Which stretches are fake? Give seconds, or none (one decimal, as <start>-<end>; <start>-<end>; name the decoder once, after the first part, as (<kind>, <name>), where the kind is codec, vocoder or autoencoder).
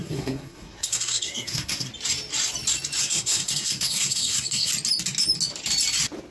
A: 0.0-1.9 (codec, SNAC); 3.0-4.7